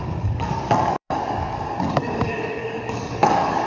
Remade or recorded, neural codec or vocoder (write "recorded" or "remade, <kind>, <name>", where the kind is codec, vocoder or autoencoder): remade, codec, DAC